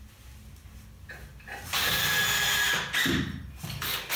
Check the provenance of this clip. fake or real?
real